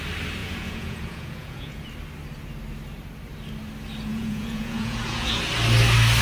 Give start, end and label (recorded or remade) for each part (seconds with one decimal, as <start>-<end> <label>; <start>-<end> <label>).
0.0-0.4 recorded; 0.4-1.9 remade; 1.9-4.1 recorded; 4.1-5.4 remade; 5.4-6.2 recorded